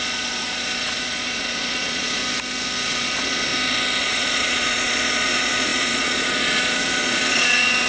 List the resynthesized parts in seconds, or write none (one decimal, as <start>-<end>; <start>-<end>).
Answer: 0.0-2.2; 2.9-3.5; 4.0-7.9